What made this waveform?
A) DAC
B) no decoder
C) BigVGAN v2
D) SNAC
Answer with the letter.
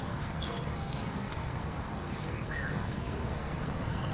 D